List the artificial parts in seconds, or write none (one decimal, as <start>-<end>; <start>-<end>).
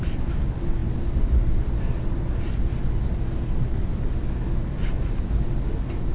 none